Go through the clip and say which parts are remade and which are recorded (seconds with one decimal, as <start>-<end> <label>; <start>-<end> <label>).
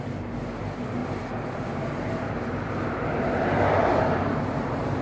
0.0-5.0 remade